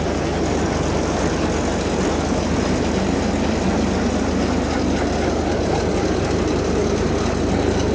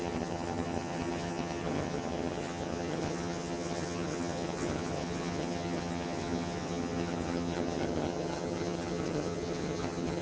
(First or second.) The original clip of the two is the first